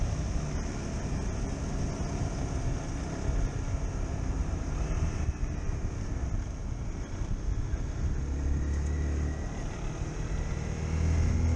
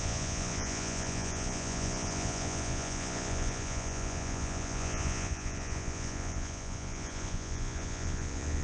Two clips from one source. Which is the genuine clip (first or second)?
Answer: first